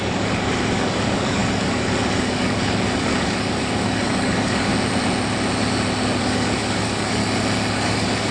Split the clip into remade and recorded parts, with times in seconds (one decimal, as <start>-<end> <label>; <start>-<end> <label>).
0.0-4.7 remade; 4.7-6.2 recorded; 6.2-7.2 remade; 7.2-7.7 recorded; 7.7-8.3 remade